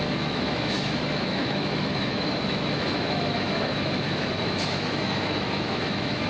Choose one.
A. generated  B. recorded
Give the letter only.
A